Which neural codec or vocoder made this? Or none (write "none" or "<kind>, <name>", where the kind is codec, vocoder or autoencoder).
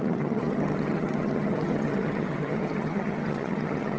vocoder, HiFi-GAN